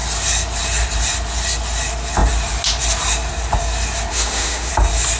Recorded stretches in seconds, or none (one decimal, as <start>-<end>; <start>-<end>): 0.0-4.1; 4.7-5.2